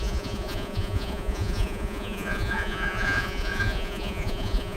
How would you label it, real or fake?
fake